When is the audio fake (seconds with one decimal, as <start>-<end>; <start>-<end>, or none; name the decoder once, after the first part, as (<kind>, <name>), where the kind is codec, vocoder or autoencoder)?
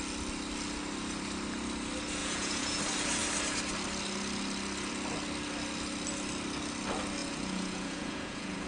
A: 2.2-2.8 (vocoder, Vocos); 7.2-8.7